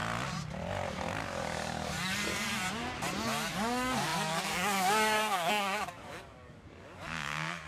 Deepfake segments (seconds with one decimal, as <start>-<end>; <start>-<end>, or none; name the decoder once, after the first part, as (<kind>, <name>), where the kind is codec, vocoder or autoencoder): 0.9-2.5 (codec, DAC); 3.5-7.7